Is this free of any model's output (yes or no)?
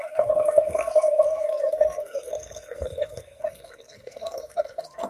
no